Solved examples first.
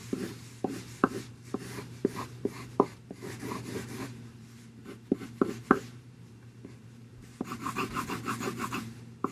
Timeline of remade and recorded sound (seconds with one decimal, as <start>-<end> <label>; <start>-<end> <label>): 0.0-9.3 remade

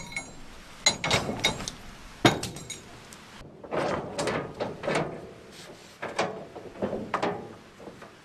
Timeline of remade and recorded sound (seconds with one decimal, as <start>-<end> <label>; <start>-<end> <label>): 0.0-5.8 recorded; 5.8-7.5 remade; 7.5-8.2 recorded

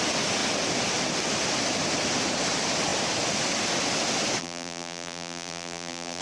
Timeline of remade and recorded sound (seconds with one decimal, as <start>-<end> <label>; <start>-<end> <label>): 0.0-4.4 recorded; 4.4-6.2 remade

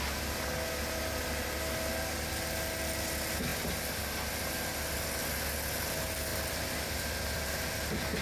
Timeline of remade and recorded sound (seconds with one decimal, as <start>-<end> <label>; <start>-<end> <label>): 0.0-6.3 recorded; 6.3-7.7 remade; 7.7-8.2 recorded

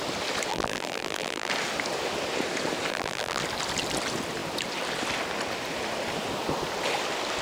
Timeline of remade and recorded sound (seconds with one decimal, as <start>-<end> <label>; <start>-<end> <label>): 0.0-0.5 recorded; 0.5-1.5 remade; 1.5-2.9 recorded; 2.9-3.4 remade; 3.4-7.4 recorded